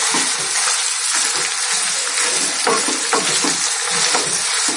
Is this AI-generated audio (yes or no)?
no